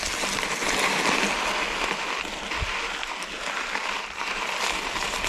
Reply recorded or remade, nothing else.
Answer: recorded